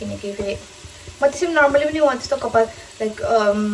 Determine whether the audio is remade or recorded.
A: recorded